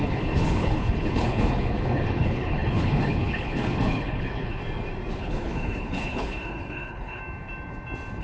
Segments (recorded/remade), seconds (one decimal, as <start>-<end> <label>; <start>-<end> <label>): 0.0-4.6 remade; 4.6-5.2 recorded; 5.2-7.2 remade; 7.2-8.2 recorded